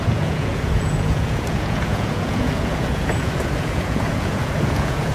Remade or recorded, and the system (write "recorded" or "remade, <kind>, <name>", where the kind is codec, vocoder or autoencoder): remade, vocoder, Vocos